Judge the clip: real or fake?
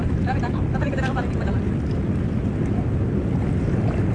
real